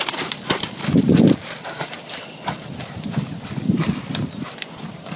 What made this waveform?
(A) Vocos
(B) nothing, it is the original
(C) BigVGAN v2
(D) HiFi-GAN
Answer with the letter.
B